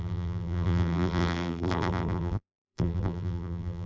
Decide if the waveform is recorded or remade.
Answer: remade